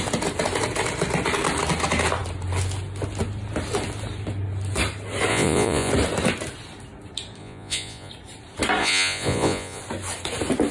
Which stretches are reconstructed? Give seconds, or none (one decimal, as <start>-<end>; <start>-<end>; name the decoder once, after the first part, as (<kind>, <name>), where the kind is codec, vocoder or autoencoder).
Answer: 5.3-5.9 (vocoder, Vocos); 7.4-8.1; 8.8-9.8